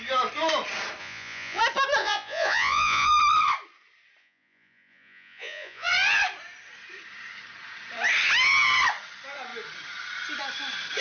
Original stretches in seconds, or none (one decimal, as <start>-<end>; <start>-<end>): 0.0-1.0; 1.6-2.0; 3.1-4.2; 5.9-11.0